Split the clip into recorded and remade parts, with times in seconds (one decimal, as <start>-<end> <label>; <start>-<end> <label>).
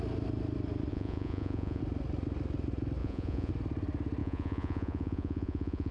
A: 0.0-0.9 recorded; 0.9-1.8 remade; 1.8-3.0 recorded; 3.0-3.5 remade; 3.5-4.2 recorded; 4.2-5.9 remade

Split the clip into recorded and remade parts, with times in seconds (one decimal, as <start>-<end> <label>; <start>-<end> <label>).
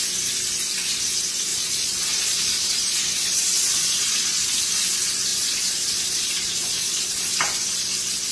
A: 0.0-1.5 recorded; 1.5-4.6 remade; 4.6-5.3 recorded; 5.3-7.3 remade; 7.3-8.3 recorded